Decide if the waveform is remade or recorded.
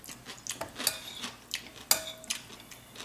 recorded